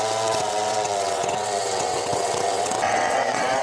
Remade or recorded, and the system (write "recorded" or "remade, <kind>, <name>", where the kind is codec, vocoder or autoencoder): remade, vocoder, WaveNeXt